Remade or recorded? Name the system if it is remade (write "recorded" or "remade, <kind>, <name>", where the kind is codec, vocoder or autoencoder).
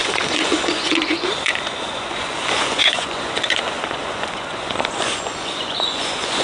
remade, vocoder, Vocos